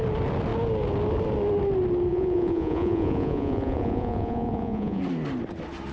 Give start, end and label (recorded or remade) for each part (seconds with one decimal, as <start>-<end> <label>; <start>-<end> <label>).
0.0-2.1 recorded; 2.1-5.0 remade; 5.0-5.9 recorded